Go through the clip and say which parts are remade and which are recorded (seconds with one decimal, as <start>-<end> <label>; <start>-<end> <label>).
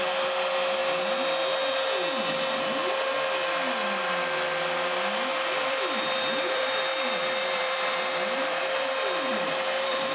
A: 0.0-5.3 recorded; 5.3-8.6 remade; 8.6-9.3 recorded; 9.3-10.1 remade